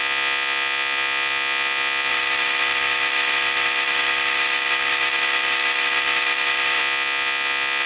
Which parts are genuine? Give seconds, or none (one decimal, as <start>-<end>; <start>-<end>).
0.0-2.1; 6.8-7.9